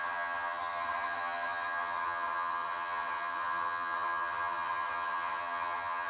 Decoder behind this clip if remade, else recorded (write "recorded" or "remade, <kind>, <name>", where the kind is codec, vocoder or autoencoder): remade, vocoder, HiFi-GAN